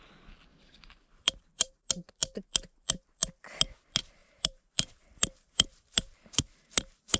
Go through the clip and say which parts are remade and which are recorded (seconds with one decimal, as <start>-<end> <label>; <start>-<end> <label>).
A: 0.0-0.5 recorded; 0.5-1.9 remade; 1.9-4.2 recorded; 4.2-7.2 remade